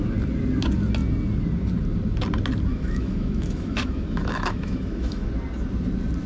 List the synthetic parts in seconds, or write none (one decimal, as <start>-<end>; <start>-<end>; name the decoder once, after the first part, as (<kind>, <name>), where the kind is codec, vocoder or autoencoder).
2.7-5.3 (autoencoder, DAC-VAE)